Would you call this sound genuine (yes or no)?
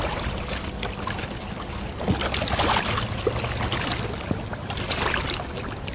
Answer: yes